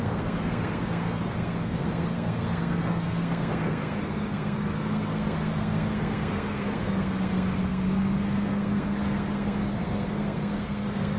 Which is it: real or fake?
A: fake